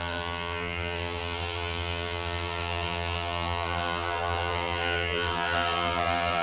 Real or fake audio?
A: fake